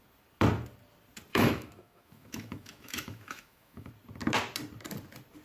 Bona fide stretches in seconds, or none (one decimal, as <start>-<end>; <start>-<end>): 0.0-1.3; 3.9-5.4